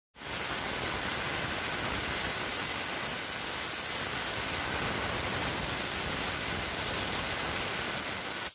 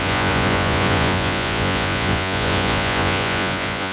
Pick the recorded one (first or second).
first